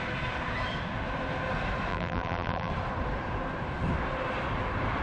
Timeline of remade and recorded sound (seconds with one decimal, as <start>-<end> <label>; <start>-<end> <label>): 0.0-1.9 recorded; 1.9-2.7 remade; 2.7-5.0 recorded